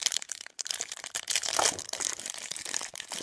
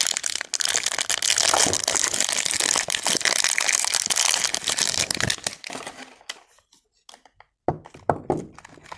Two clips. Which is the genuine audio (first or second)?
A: second